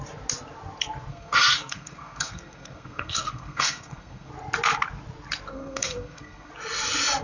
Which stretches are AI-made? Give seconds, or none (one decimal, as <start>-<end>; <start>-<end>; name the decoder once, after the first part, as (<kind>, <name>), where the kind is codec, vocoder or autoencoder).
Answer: 1.1-4.3 (codec, SNAC); 5.5-6.5

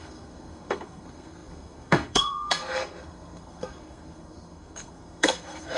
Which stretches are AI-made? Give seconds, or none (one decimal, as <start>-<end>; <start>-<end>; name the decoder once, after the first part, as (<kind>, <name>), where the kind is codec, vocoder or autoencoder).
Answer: 0.0-5.8 (codec, SNAC)

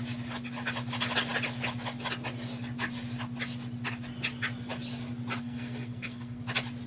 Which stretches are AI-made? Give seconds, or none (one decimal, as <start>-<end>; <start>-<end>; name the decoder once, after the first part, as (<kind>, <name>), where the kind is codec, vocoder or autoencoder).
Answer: 5.4-6.4 (codec, SNAC)

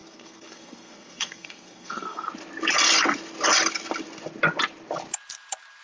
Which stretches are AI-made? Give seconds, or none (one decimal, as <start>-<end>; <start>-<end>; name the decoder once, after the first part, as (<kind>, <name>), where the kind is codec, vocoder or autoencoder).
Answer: 0.0-2.3 (codec, SNAC)